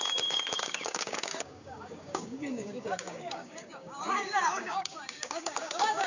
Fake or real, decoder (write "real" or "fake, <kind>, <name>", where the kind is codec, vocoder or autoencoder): fake, codec, DAC